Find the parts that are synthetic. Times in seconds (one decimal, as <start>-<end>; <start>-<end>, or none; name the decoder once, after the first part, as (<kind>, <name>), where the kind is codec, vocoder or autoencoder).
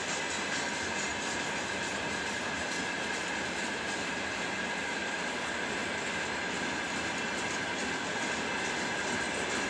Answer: none